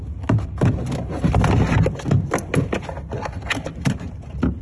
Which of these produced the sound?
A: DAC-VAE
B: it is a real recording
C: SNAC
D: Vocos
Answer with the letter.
B